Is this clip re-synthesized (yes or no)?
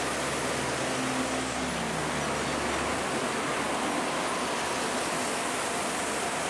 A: no